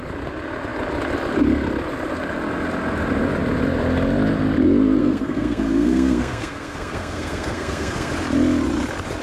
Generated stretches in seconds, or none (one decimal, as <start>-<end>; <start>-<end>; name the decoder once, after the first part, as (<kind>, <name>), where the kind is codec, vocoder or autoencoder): 5.0-8.1 (codec, SNAC)